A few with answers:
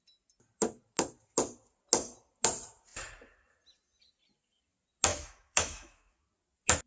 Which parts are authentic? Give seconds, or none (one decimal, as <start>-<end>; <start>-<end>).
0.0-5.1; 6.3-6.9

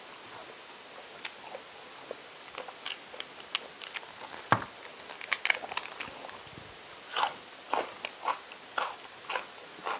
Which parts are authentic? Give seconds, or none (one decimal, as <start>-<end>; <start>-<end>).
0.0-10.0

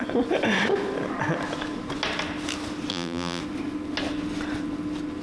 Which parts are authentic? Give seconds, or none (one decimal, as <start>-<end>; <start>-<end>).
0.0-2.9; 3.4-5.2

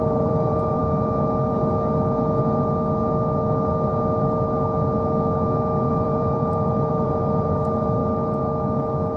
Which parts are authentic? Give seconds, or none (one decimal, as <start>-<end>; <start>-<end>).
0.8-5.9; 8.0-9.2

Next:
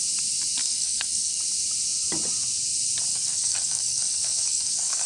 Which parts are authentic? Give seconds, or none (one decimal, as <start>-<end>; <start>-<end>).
0.0-0.6; 1.4-3.1